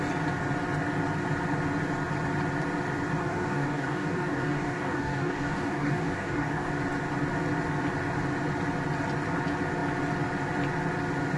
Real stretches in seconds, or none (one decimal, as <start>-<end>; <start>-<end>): 0.0-3.2; 6.7-11.4